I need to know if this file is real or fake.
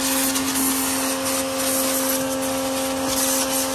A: real